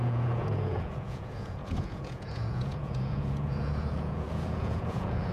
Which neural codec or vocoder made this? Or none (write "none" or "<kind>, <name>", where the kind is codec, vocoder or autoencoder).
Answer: vocoder, Vocos